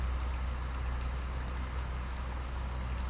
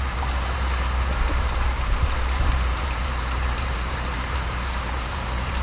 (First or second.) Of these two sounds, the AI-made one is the second